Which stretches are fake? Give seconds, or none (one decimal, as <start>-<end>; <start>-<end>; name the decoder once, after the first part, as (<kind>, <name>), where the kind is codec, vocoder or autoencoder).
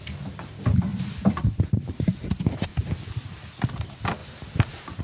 0.9-2.3 (vocoder, BigVGAN v2); 4.2-5.0